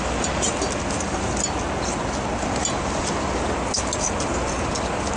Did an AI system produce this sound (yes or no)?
no